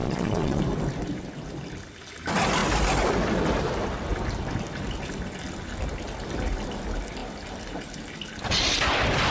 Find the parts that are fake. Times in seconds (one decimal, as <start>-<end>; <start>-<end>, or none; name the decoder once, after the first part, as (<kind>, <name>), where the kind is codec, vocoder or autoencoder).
0.0-0.6 (vocoder, Vocos)